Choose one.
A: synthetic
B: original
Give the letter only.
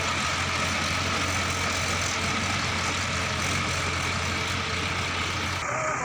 B